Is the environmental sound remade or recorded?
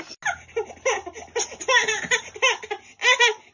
recorded